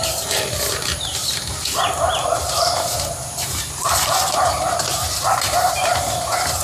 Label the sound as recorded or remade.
remade